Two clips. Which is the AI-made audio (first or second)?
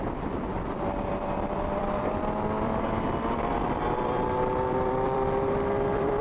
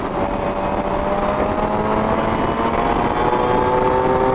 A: first